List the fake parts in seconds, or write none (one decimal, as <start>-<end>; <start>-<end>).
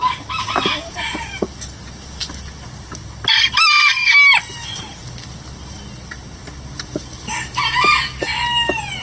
none